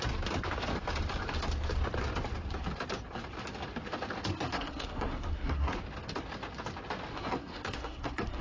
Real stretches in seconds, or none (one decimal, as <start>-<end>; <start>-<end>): 0.0-4.3; 5.8-7.1

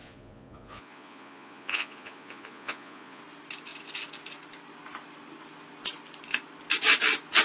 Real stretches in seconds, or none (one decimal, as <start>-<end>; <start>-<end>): 3.2-7.4

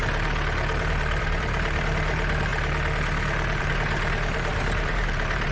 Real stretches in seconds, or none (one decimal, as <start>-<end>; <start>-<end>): 0.0-0.8; 2.5-3.6